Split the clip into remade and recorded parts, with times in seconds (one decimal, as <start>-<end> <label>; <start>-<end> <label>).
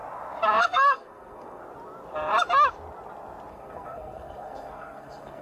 0.0-0.6 recorded; 0.6-1.6 remade; 1.6-3.5 recorded; 3.5-5.4 remade